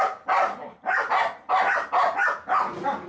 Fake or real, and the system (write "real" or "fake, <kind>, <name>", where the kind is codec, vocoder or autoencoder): real